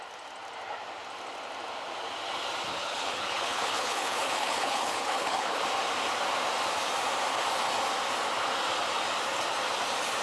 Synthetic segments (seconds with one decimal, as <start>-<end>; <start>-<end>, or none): 2.7-5.6